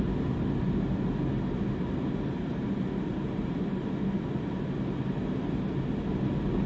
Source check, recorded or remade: recorded